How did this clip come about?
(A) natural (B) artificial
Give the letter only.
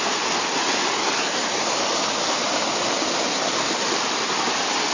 A